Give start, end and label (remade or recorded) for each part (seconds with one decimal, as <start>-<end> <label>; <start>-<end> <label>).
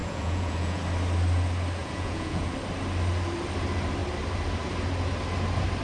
0.0-0.8 remade; 0.8-1.8 recorded; 1.8-2.5 remade; 2.5-5.8 recorded